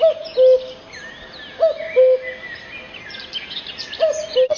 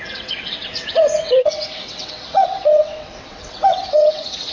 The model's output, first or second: second